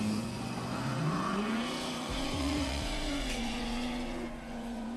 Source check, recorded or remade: remade